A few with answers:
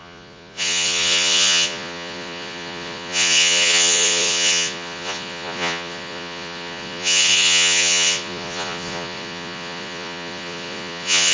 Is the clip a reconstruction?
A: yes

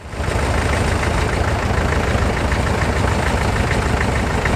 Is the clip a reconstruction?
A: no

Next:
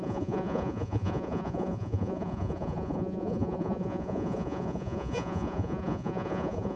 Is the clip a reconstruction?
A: yes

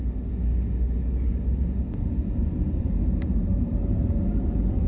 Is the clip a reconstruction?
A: no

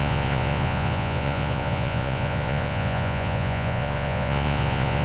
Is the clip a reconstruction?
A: yes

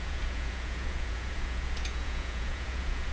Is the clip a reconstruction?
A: yes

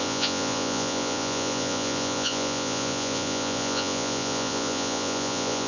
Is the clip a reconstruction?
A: yes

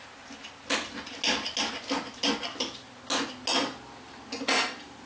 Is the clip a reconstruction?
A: no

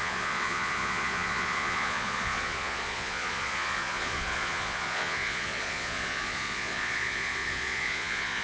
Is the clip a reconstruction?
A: yes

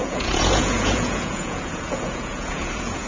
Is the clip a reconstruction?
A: yes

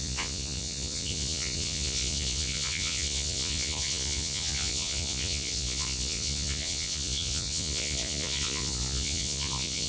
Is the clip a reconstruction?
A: yes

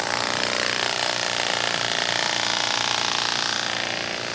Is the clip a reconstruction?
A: no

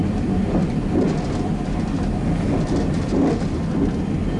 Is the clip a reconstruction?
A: no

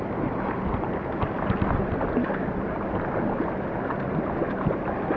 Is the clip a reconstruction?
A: no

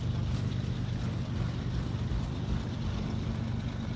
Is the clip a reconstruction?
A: no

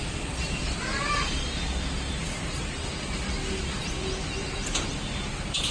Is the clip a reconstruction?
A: no